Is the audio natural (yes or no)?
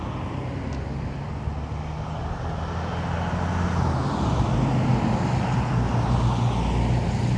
yes